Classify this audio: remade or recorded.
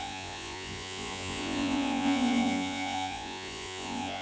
remade